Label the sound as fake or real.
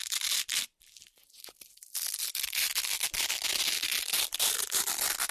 real